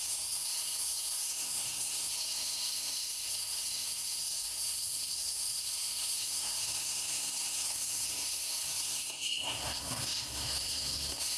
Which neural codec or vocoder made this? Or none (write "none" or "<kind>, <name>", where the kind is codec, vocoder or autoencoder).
codec, SNAC